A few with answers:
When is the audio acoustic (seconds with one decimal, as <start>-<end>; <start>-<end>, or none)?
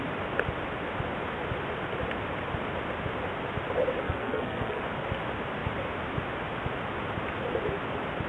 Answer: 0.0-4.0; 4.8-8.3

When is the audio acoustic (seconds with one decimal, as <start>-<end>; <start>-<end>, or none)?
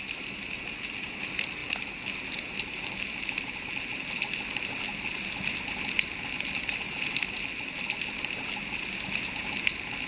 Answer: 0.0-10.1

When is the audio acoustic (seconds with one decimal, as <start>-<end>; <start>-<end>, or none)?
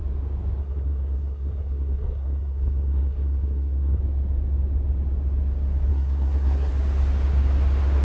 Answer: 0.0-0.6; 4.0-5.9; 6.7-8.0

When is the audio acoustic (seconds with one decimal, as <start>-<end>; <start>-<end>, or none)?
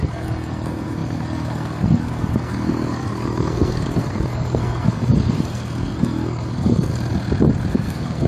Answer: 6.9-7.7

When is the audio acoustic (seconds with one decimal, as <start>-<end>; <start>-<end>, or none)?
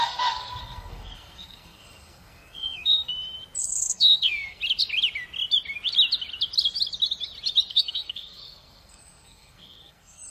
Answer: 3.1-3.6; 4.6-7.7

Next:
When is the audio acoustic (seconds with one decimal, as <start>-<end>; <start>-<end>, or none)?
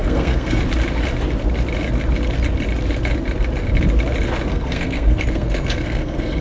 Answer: 0.6-4.5